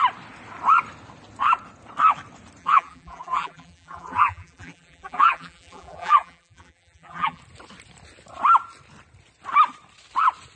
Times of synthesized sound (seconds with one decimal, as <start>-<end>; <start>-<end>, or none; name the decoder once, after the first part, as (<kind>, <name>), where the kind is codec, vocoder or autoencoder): 2.6-7.4 (vocoder, BigVGAN v2)